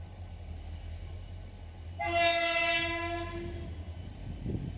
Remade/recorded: recorded